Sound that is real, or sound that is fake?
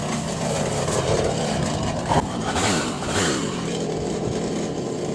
real